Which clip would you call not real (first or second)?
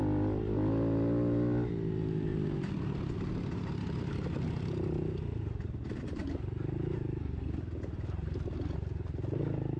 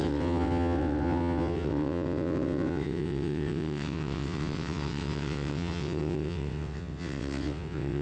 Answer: second